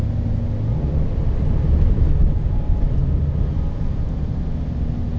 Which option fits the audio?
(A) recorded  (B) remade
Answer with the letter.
A